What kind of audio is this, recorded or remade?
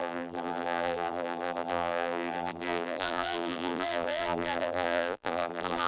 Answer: remade